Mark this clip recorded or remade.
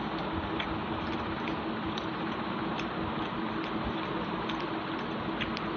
recorded